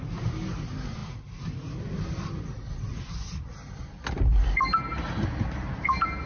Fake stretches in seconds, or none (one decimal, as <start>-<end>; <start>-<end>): none